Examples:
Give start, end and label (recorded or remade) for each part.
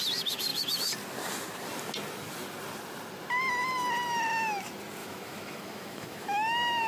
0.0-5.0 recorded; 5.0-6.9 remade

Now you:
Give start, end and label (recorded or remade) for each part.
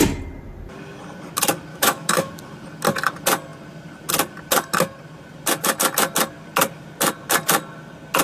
0.0-1.7 recorded; 1.7-2.3 remade; 2.3-8.2 recorded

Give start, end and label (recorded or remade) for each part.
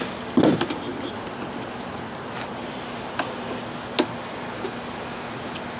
0.0-5.8 recorded